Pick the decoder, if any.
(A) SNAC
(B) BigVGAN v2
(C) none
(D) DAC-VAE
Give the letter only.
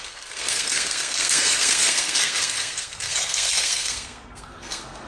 A